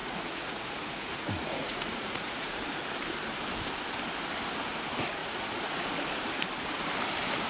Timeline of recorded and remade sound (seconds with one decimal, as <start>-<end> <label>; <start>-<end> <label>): 0.0-2.6 remade; 2.6-5.2 recorded; 5.2-5.9 remade; 5.9-7.5 recorded